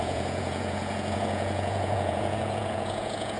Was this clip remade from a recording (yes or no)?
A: yes